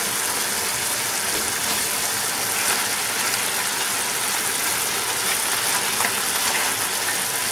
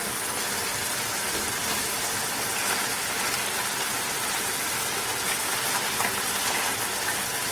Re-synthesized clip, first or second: second